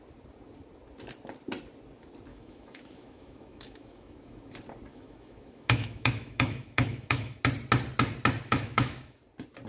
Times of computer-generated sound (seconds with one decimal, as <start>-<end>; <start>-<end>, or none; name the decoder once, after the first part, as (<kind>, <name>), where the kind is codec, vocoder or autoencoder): 2.3-4.5 (autoencoder, DAC-VAE); 4.9-7.4; 8.5-9.2